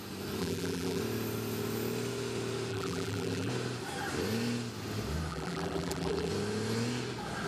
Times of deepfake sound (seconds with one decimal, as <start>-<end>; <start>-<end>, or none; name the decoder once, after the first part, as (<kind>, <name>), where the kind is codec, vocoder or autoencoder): 0.4-1.0 (vocoder, BigVGAN v2); 2.7-3.5; 5.3-6.3